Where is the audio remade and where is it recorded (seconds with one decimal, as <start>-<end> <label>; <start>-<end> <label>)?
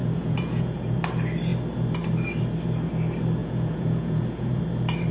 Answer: 0.0-1.0 remade; 1.0-3.4 recorded; 3.4-4.6 remade; 4.6-5.1 recorded